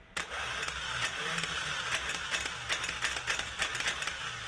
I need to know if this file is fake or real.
real